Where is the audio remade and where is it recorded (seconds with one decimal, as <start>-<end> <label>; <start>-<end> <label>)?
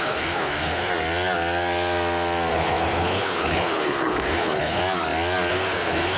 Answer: 0.0-0.9 remade; 0.9-2.5 recorded; 2.5-4.8 remade; 4.8-5.5 recorded; 5.5-6.2 remade